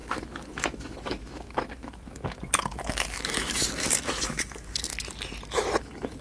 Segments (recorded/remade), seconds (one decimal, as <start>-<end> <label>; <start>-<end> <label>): 0.0-4.9 remade; 4.9-5.8 recorded; 5.8-6.2 remade